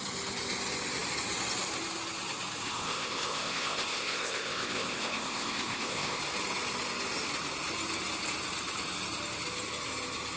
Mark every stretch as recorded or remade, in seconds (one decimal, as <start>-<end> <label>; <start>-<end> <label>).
0.0-2.6 recorded; 2.6-6.2 remade; 6.2-10.4 recorded